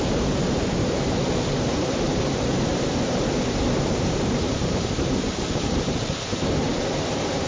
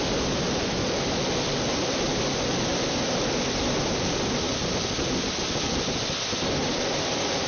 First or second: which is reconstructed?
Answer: first